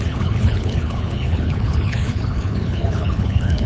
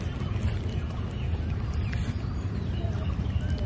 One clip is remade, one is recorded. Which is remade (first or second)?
first